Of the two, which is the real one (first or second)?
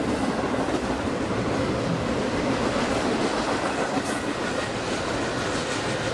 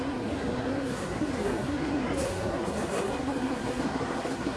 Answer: first